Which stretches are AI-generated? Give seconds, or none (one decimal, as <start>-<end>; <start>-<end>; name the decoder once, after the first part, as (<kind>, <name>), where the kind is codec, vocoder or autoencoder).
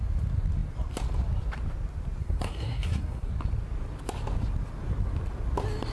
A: 2.2-3.3 (codec, SNAC)